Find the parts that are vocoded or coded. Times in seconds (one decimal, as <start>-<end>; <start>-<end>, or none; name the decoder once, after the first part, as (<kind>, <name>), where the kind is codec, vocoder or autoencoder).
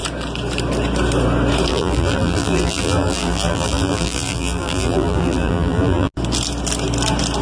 1.7-6.1 (vocoder, BigVGAN v2)